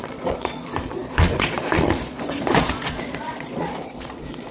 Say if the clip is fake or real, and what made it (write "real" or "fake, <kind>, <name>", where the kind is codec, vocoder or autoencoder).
fake, vocoder, Vocos